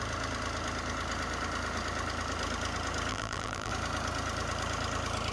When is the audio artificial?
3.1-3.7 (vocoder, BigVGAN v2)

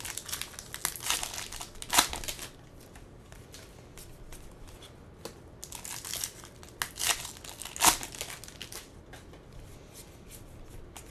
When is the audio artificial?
none

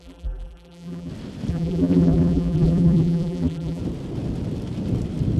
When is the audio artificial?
0.0-1.1 (vocoder, BigVGAN v2); 1.5-3.8

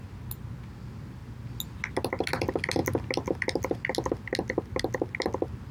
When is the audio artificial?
none

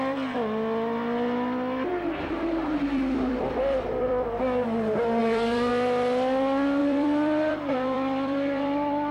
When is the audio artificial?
1.9-4.4 (vocoder, BigVGAN v2); 5.2-5.7; 6.8-9.1